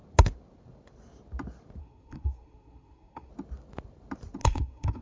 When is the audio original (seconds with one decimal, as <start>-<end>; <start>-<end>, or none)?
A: 0.0-1.8; 3.3-4.4